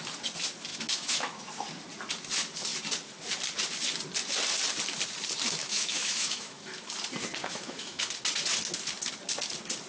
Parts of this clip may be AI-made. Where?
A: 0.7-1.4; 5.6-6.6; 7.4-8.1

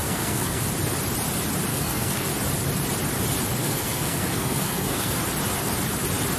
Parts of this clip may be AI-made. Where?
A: 0.0-0.6; 1.7-2.3; 3.6-5.2